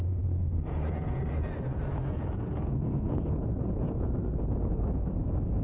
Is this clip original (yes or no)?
no